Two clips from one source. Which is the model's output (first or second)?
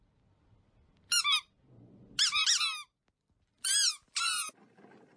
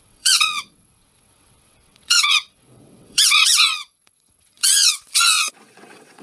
second